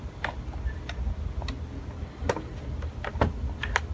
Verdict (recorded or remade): recorded